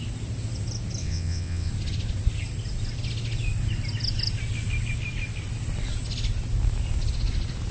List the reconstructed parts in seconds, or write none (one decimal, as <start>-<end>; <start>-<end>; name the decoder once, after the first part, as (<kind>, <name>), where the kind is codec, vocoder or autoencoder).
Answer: 1.0-1.7 (vocoder, WaveNeXt)